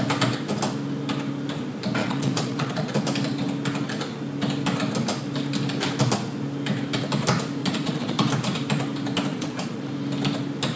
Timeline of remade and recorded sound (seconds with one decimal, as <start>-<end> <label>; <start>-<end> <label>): 0.0-2.0 recorded; 2.0-2.9 remade; 2.9-7.6 recorded; 7.6-8.3 remade; 8.3-9.3 recorded; 9.3-9.9 remade; 9.9-10.8 recorded